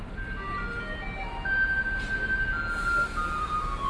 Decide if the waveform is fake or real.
real